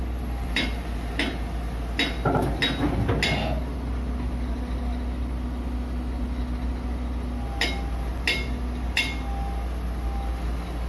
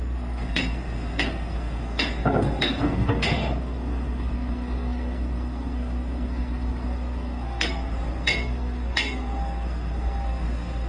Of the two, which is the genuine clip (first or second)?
first